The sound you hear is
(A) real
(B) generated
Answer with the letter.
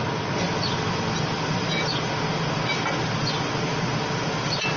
A